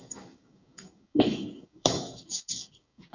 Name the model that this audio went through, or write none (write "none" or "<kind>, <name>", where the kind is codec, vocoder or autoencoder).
codec, DAC